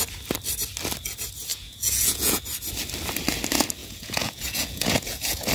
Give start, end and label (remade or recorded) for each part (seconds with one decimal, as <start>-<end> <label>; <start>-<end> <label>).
0.0-1.5 recorded; 1.5-2.4 remade; 2.4-3.8 recorded; 3.8-5.5 remade